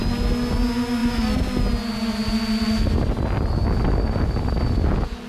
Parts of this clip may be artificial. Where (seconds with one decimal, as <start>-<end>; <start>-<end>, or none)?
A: none